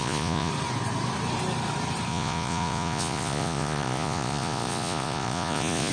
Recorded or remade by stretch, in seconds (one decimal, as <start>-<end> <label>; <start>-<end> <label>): 0.0-0.5 remade; 0.5-2.1 recorded; 2.1-5.9 remade